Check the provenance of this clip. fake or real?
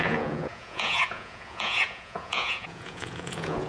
fake